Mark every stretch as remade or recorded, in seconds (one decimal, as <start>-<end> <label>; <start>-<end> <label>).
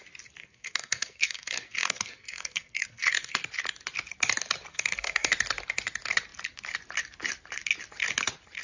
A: 0.0-0.4 recorded; 0.4-3.4 remade; 3.4-4.7 recorded; 4.7-5.3 remade; 5.3-8.6 recorded